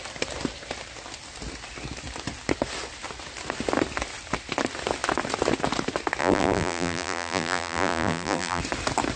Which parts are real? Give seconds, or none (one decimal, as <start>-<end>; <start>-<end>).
0.0-6.2; 8.6-9.2

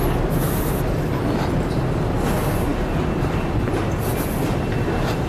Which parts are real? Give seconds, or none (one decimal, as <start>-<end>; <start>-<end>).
0.0-5.3

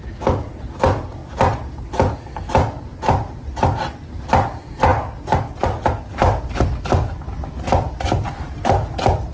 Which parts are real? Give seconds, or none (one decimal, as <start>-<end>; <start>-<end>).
0.0-9.3

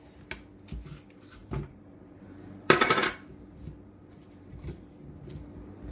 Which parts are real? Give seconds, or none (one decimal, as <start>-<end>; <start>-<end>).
0.0-1.4; 4.9-5.9

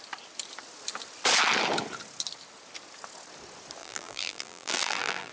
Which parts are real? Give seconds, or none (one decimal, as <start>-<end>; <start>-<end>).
0.0-3.8

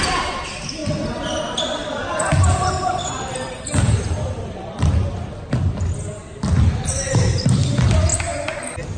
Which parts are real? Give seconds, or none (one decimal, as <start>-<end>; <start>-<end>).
0.0-0.8; 1.4-1.8; 5.8-9.0